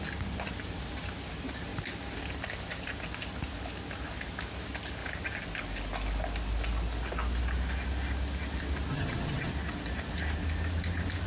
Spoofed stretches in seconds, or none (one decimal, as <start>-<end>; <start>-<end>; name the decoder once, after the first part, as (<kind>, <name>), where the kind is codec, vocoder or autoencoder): 8.9-9.5 (vocoder, HiFi-GAN)